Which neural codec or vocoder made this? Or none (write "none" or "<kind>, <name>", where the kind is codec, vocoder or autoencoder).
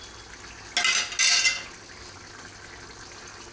none